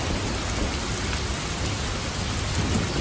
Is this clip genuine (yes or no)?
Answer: yes